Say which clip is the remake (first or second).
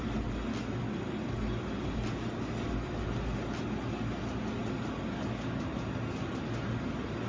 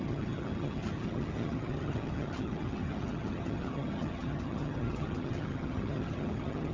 second